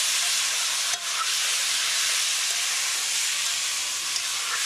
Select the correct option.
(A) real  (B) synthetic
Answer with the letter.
B